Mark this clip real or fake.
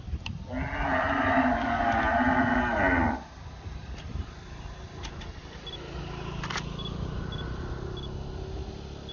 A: real